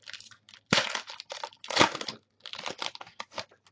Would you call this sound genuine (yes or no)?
yes